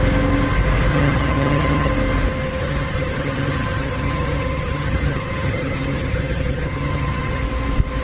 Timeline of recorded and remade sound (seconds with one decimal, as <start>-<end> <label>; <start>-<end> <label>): 0.0-0.9 recorded; 0.9-1.9 remade; 1.9-2.6 recorded; 2.6-7.4 remade; 7.4-8.0 recorded